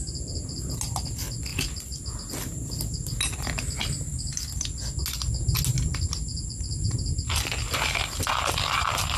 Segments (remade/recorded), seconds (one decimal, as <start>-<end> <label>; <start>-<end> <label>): 0.0-6.3 recorded; 6.3-7.0 remade; 7.0-9.2 recorded